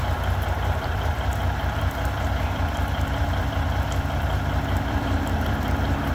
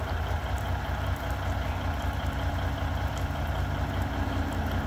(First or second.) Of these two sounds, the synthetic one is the first